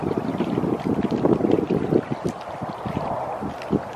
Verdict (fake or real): real